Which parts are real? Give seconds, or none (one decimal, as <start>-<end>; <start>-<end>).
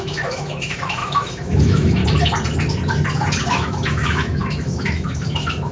2.0-3.5